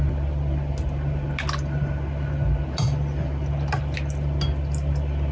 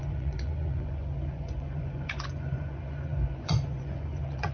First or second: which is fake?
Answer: second